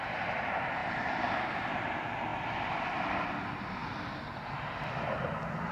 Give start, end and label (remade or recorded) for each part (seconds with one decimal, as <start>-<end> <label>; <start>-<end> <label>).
0.0-0.8 recorded; 0.8-1.7 remade; 1.7-2.3 recorded; 2.3-3.3 remade; 3.3-5.7 recorded